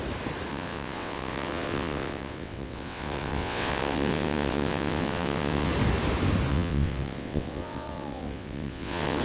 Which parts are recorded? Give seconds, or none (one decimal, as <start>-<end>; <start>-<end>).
0.0-0.5; 5.7-6.5